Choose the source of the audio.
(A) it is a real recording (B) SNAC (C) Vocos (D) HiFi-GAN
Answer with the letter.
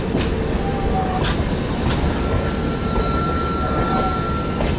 A